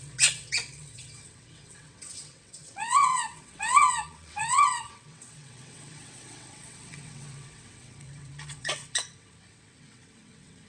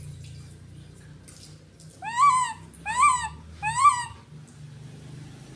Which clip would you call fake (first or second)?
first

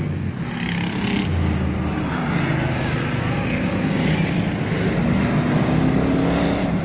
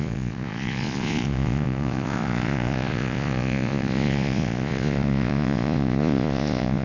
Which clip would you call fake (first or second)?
second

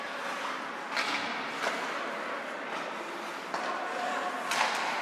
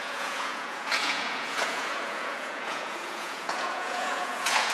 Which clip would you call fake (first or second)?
second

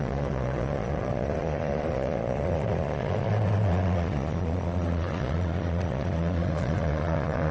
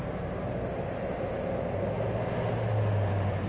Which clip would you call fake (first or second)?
first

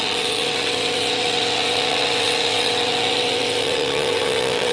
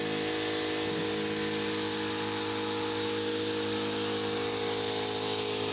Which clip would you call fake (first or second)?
first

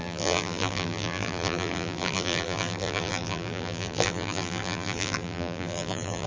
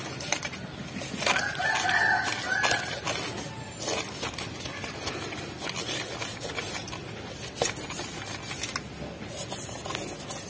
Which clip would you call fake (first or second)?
first